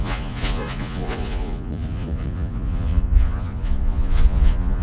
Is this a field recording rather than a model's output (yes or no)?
no